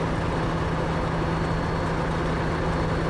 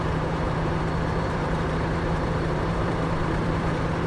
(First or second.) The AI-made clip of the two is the second